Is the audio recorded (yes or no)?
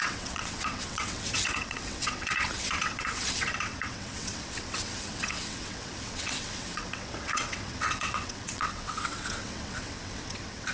no